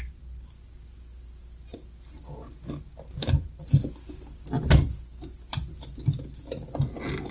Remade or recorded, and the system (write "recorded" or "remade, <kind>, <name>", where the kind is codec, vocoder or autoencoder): recorded